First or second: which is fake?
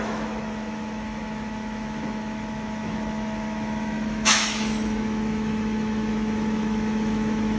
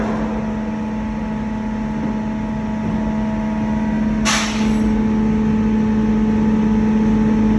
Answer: first